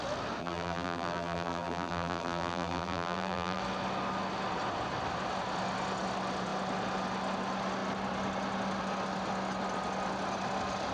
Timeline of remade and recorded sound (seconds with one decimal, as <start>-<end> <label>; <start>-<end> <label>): 0.0-0.4 recorded; 0.4-3.6 remade; 3.6-10.9 recorded